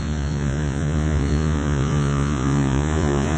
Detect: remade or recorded remade